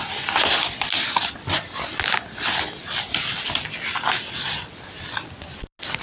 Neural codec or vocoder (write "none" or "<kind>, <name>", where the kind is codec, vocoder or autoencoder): none